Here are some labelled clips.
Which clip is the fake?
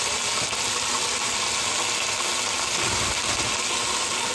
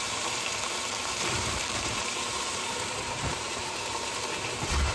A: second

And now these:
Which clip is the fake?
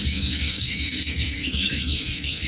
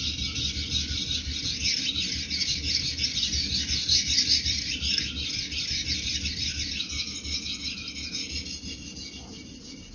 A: first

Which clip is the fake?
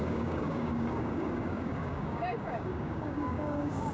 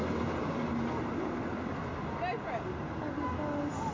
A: first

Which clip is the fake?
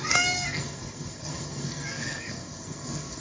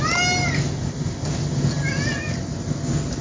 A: first